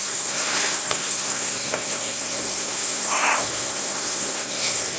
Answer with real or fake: fake